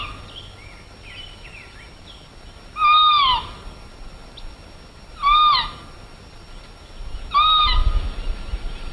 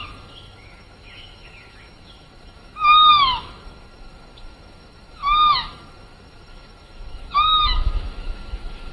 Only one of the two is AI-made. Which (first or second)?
second